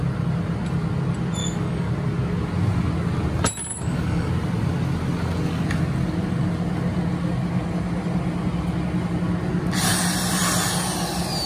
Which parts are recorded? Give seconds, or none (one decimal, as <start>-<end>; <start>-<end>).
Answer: 0.0-1.4; 1.9-3.7; 4.3-11.5